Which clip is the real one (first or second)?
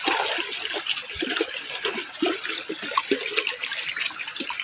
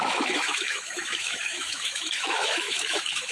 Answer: first